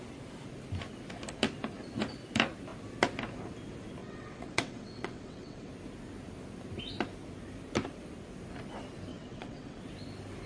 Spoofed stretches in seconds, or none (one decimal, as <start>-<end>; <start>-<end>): 4.0-5.7; 9.1-9.8